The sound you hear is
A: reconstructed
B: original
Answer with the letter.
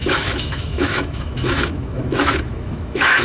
A